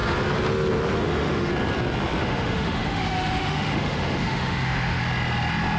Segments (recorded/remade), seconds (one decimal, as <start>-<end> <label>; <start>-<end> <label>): 0.0-1.0 recorded; 1.0-1.5 remade; 1.5-2.2 recorded; 2.2-5.0 remade; 5.0-5.8 recorded

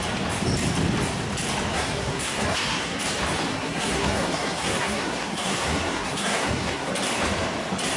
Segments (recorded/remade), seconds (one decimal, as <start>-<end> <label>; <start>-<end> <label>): 0.0-1.7 recorded; 1.7-3.0 remade; 3.0-3.5 recorded; 3.5-6.9 remade; 6.9-8.0 recorded